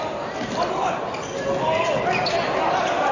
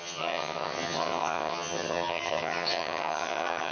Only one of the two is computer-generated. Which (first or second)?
second